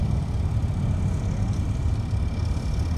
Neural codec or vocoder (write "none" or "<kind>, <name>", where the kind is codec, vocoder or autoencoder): none